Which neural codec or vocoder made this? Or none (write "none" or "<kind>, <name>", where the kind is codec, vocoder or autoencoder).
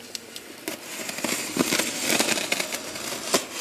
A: none